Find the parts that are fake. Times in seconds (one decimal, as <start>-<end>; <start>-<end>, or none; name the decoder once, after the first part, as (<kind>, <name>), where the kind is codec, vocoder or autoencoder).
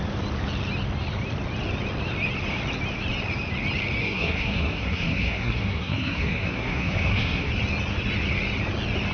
4.0-7.5 (codec, SNAC)